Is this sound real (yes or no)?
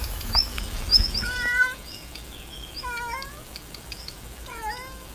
no